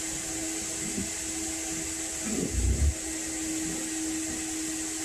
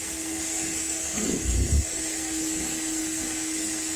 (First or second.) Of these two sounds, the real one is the first